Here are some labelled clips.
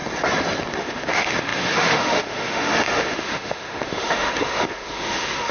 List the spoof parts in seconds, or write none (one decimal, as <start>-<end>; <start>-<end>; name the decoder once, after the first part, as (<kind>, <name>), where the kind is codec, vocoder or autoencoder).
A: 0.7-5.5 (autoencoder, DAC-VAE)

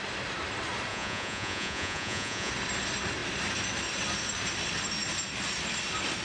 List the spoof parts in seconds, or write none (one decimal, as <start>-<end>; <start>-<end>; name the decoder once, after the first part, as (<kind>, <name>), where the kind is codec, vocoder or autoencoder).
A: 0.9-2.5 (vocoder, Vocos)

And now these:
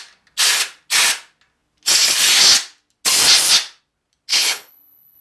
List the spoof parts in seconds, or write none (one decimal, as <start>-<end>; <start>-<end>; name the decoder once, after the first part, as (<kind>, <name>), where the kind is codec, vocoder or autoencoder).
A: 4.3-5.2 (codec, HILCodec)